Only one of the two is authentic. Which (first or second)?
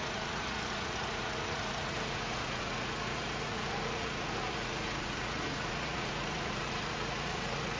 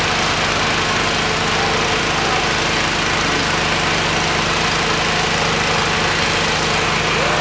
second